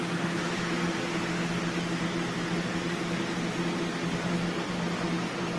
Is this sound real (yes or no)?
yes